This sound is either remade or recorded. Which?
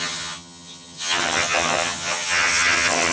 remade